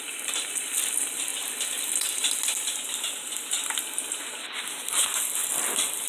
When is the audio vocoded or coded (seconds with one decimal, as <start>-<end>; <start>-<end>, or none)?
none